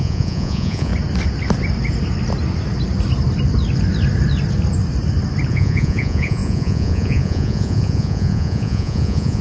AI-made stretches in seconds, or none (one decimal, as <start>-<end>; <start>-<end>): 0.0-0.9; 5.5-9.4